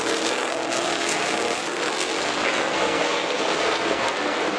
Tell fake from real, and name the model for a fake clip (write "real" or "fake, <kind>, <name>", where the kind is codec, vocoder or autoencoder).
fake, codec, SNAC